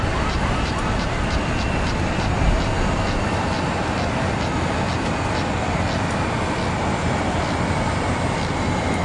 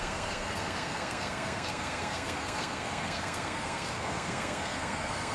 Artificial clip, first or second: second